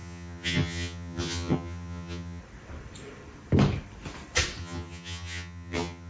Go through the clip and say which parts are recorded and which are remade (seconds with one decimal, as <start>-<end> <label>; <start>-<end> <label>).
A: 0.0-2.4 remade; 2.4-4.6 recorded; 4.6-6.1 remade